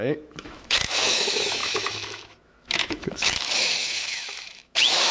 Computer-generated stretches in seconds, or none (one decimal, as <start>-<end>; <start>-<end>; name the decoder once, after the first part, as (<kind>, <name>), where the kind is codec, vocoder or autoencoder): 0.0-5.1 (autoencoder, DAC-VAE)